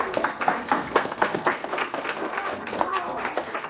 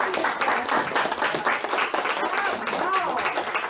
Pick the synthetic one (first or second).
first